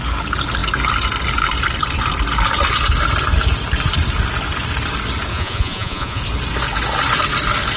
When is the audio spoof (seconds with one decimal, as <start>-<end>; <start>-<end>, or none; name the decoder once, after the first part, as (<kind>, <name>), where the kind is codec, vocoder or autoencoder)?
5.3-6.2 (vocoder, Vocos)